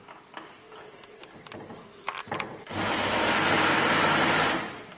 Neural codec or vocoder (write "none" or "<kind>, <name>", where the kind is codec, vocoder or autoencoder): none